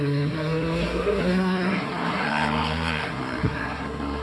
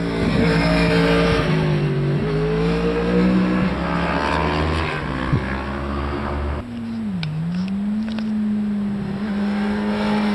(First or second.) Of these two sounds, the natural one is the second